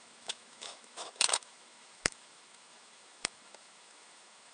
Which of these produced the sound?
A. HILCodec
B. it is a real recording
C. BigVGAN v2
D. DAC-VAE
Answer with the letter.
D